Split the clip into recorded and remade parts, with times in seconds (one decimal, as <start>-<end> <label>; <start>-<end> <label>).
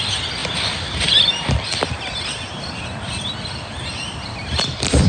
0.0-5.1 remade